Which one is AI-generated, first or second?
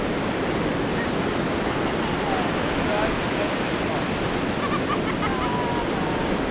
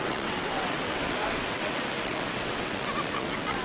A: second